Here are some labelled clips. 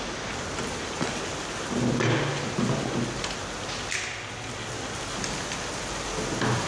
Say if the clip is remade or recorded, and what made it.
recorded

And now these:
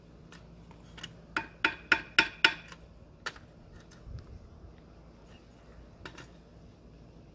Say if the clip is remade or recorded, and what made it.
recorded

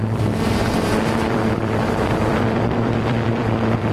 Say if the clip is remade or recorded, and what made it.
remade, vocoder, BigVGAN v2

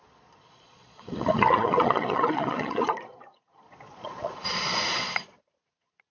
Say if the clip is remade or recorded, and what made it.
remade, vocoder, Vocos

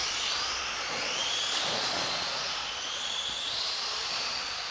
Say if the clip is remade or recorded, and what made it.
remade, vocoder, Vocos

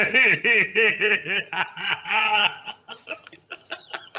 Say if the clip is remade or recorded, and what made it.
remade, vocoder, HiFi-GAN